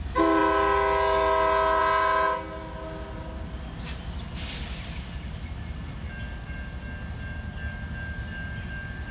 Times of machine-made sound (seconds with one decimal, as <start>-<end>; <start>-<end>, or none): none